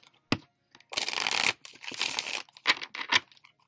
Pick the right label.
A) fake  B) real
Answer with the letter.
B